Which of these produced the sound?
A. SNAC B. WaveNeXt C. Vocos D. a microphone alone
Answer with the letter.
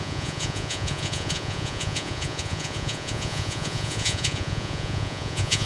C